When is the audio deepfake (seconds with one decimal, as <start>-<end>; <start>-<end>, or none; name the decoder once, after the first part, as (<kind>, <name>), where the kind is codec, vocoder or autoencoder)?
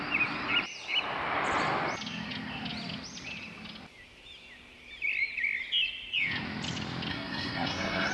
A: 7.1-8.1 (codec, SNAC)